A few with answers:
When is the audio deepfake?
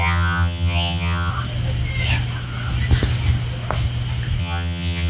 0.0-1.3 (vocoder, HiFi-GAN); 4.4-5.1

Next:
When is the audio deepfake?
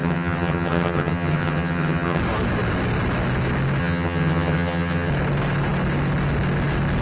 0.0-2.2 (vocoder, HiFi-GAN); 3.8-5.1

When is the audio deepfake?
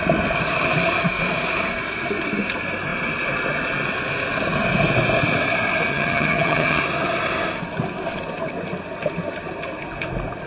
5.9-6.8 (vocoder, HiFi-GAN)